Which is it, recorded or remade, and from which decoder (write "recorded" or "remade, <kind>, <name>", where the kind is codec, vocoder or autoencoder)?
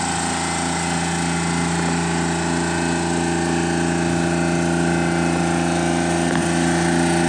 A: recorded